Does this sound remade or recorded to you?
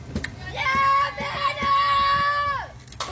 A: recorded